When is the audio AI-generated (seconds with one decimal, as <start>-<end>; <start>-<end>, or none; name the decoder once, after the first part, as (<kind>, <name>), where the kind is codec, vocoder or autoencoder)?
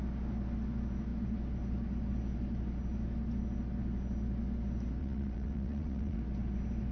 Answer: 5.0-6.2 (vocoder, WaveNeXt)